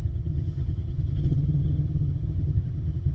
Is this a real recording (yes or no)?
no